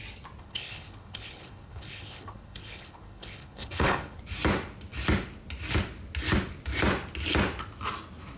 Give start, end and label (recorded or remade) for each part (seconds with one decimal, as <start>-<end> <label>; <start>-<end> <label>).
0.0-0.4 recorded; 0.4-4.2 remade; 4.2-8.4 recorded